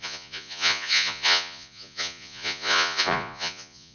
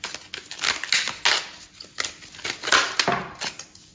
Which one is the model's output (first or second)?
first